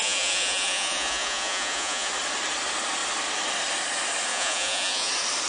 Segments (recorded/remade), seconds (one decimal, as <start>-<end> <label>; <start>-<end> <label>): 0.0-2.1 remade; 2.1-4.3 recorded; 4.3-5.1 remade; 5.1-5.5 recorded